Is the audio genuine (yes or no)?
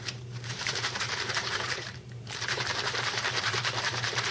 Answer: no